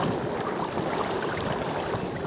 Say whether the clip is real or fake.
real